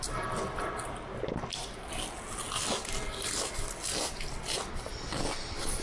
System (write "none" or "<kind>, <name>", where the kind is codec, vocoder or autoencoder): none